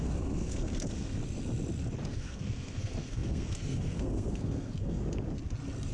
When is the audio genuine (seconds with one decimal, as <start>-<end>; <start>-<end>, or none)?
1.2-2.1; 5.0-5.9